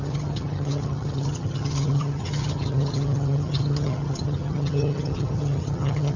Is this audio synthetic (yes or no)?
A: yes